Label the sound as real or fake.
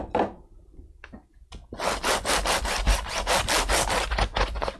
real